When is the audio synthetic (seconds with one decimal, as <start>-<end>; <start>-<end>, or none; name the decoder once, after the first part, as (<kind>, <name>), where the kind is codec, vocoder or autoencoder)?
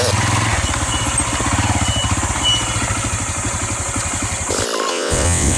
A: 4.9-5.6 (vocoder, WaveNeXt)